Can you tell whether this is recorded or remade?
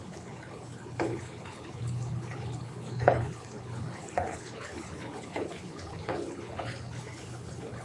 remade